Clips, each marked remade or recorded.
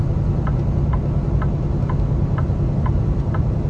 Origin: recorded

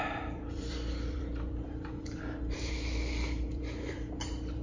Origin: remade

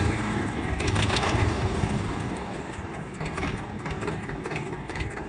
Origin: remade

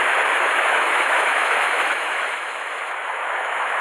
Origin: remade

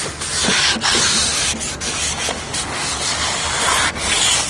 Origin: recorded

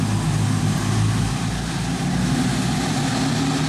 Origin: recorded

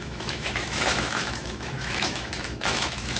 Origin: remade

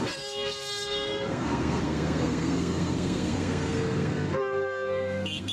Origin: remade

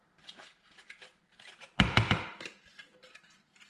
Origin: recorded